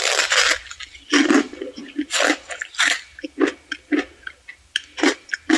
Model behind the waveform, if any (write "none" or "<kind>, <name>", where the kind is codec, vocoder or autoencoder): none